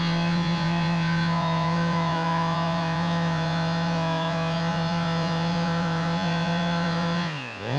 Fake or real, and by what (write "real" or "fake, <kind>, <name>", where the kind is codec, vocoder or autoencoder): fake, vocoder, Vocos